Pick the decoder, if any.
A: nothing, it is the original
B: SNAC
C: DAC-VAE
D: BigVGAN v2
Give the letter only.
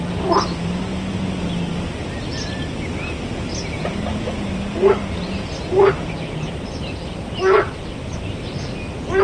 A